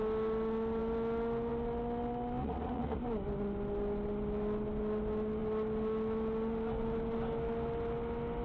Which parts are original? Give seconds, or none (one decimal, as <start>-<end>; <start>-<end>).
0.0-2.4; 3.0-8.4